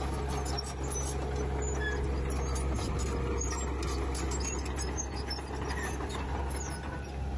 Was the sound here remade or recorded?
recorded